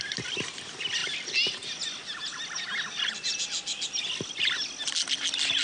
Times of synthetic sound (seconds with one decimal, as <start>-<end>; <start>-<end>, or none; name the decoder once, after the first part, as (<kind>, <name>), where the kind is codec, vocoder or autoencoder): none